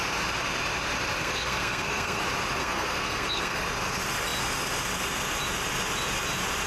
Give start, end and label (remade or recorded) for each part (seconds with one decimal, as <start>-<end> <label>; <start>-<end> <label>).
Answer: 0.0-1.2 recorded; 1.2-2.2 remade; 2.2-2.6 recorded; 2.6-3.6 remade; 3.6-6.7 recorded